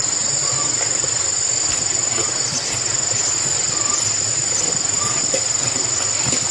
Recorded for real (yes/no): yes